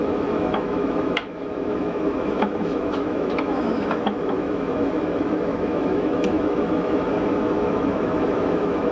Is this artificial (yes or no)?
yes